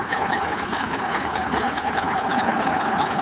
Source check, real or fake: fake